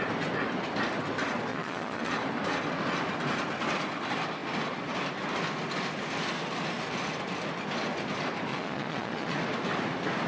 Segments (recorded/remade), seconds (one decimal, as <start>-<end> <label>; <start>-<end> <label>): 0.0-1.5 recorded; 1.5-2.1 remade; 2.1-8.5 recorded; 8.5-9.4 remade; 9.4-10.3 recorded